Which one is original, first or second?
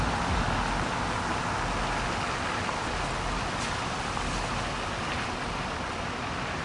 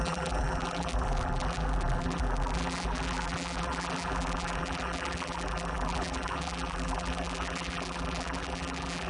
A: first